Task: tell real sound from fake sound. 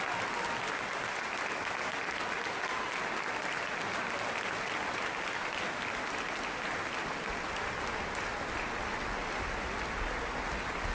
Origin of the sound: real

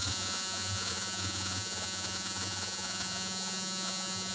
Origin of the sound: fake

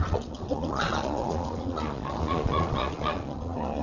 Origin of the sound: fake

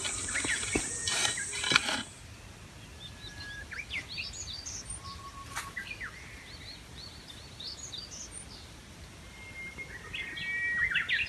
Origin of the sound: real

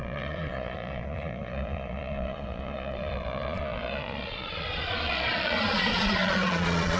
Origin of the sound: fake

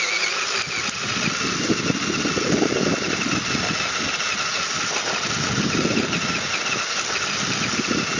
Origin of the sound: real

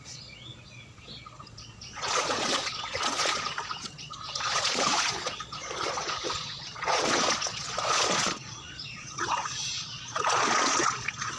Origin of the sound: fake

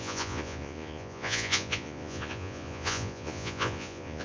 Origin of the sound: fake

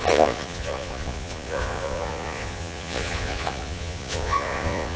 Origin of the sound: fake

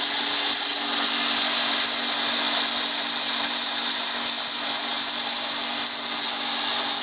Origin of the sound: real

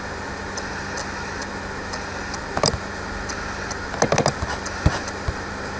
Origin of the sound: real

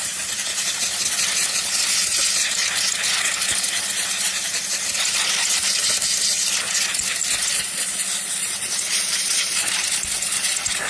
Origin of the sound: real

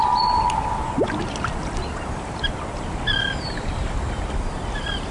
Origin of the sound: real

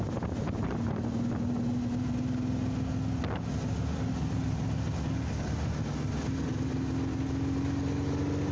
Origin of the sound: real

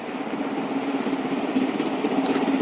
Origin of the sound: real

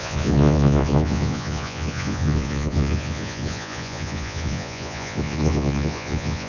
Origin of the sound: fake